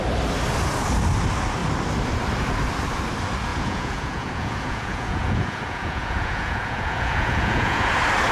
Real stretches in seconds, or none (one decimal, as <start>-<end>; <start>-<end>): 0.0-3.5; 7.9-8.3